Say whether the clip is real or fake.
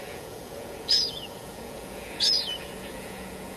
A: fake